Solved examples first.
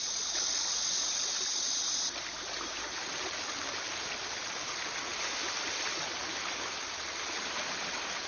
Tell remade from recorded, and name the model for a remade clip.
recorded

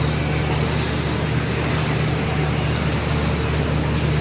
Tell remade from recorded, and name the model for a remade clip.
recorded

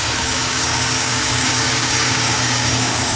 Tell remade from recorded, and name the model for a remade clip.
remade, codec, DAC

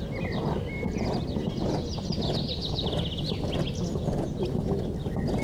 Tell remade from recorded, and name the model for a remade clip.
recorded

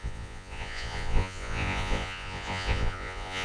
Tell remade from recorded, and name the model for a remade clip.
remade, vocoder, Vocos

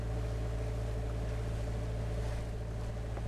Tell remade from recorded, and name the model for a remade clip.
recorded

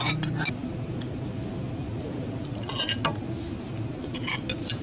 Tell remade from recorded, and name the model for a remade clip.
recorded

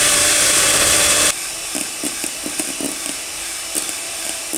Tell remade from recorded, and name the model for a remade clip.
remade, vocoder, BigVGAN v2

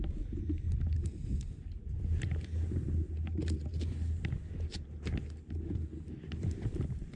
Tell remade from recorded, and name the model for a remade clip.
recorded